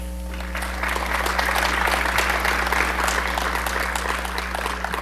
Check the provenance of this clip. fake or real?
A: real